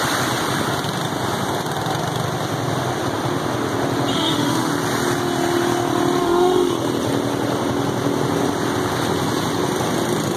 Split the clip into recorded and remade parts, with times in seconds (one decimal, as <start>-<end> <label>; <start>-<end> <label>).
0.0-4.1 recorded; 4.1-4.7 remade; 4.7-6.2 recorded; 6.2-6.7 remade; 6.7-10.4 recorded